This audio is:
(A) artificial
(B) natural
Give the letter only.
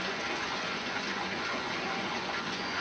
A